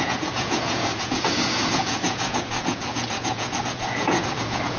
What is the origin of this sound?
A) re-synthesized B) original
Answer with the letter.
A